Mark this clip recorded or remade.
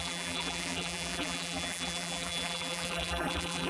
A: remade